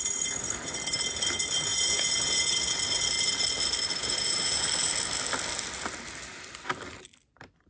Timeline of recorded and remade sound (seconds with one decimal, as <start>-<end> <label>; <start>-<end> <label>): 0.0-1.7 recorded; 1.7-3.0 remade; 3.0-4.0 recorded; 4.0-4.6 remade; 4.6-7.7 recorded